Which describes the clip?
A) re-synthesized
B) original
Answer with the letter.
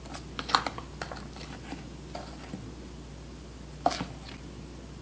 B